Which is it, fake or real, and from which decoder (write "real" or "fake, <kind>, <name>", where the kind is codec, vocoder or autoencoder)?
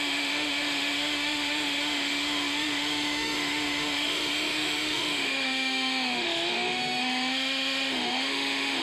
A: fake, autoencoder, DAC-VAE